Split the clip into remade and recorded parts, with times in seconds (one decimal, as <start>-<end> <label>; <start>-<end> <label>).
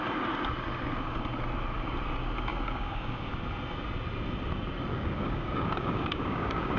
0.0-2.5 recorded; 2.5-3.3 remade; 3.3-4.9 recorded; 4.9-6.8 remade